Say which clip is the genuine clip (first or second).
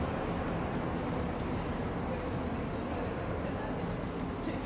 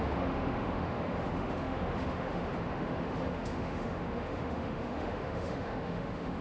first